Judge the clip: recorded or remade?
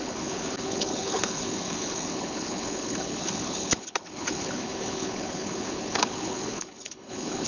remade